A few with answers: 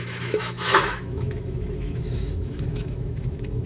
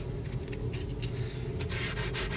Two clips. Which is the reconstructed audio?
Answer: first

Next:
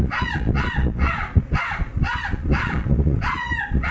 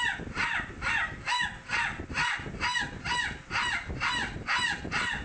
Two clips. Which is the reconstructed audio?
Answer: first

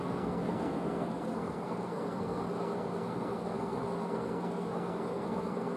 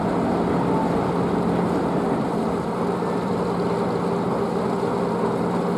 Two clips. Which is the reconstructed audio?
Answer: first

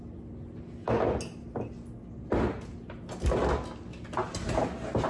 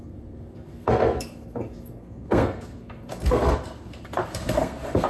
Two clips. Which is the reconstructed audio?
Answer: second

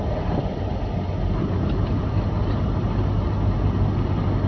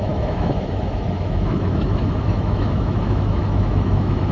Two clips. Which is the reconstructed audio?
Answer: second